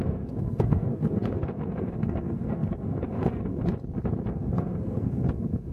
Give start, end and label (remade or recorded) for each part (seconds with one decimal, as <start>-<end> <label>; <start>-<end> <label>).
0.0-3.7 remade; 3.7-4.3 recorded; 4.3-5.7 remade